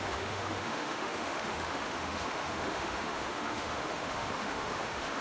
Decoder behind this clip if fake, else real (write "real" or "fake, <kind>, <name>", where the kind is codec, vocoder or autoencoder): fake, autoencoder, DAC-VAE